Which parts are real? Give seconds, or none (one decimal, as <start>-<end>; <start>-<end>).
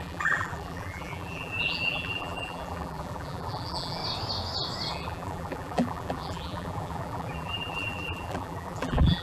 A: 4.0-4.9